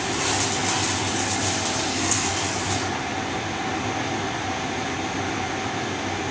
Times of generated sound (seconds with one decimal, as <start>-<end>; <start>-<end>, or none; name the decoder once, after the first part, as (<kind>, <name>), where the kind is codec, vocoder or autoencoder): 1.9-2.6 (codec, SNAC)